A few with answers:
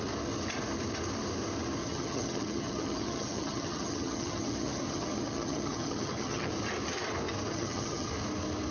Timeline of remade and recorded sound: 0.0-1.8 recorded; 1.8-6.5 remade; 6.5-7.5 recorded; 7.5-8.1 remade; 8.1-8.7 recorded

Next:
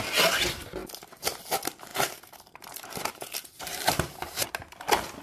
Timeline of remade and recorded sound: 0.0-1.9 recorded; 1.9-4.5 remade; 4.5-5.2 recorded

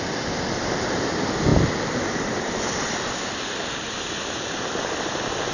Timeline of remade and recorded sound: 0.0-1.5 recorded; 1.5-2.6 remade; 2.6-5.5 recorded

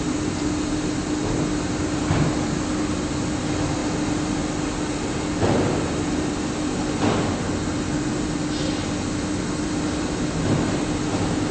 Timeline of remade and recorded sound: 0.0-11.5 recorded

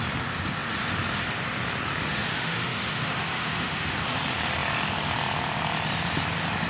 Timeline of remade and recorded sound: 0.0-2.3 recorded; 2.3-3.9 remade; 3.9-6.7 recorded

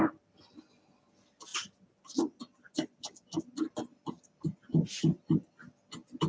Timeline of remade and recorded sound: 0.0-6.3 recorded